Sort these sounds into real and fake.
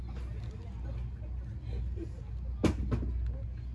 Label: real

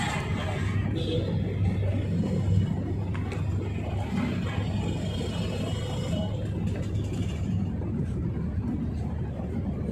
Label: real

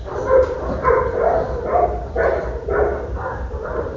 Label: fake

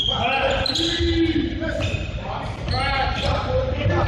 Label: real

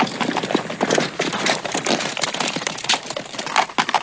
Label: real